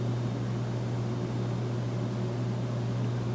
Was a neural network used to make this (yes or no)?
no